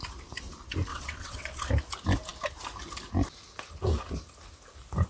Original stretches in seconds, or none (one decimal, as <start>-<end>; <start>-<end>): 0.0-0.9; 1.7-5.1